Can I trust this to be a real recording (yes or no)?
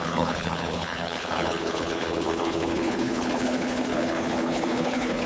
no